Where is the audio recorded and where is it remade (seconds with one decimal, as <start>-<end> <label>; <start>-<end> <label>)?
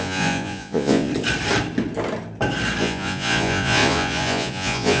0.0-1.1 remade; 1.1-2.8 recorded; 2.8-5.0 remade